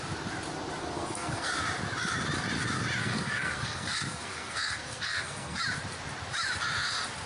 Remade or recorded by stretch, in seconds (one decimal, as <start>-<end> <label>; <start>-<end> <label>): 0.0-0.8 recorded; 0.8-1.5 remade; 1.5-3.0 recorded; 3.0-5.6 remade; 5.6-7.3 recorded